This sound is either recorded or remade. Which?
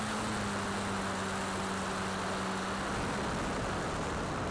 recorded